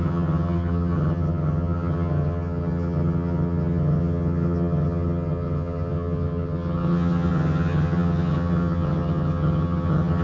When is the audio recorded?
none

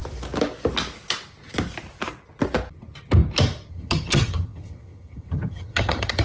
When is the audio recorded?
0.0-3.7

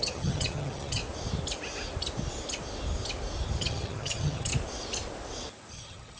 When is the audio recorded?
1.0-3.6; 4.5-5.7

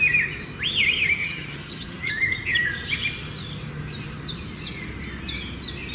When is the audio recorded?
0.0-1.2; 2.1-5.9

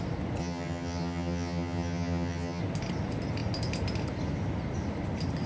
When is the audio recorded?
0.0-0.4; 2.6-5.5

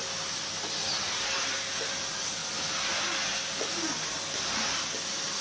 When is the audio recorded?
0.0-5.4

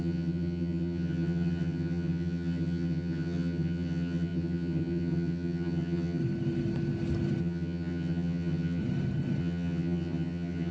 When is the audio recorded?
6.2-7.4; 8.8-9.4

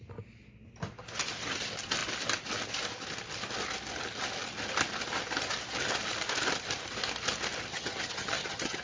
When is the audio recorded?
0.0-7.7